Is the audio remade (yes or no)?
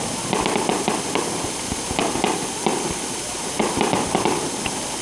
no